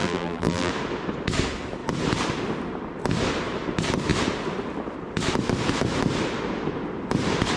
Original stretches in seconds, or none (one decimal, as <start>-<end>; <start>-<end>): 0.7-7.6